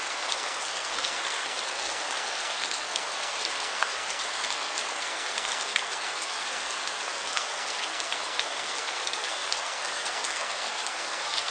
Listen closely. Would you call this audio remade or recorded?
remade